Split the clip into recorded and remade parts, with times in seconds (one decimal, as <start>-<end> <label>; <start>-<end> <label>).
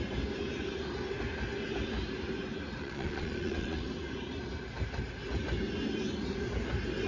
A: 0.0-2.8 recorded; 2.8-3.8 remade; 3.8-7.1 recorded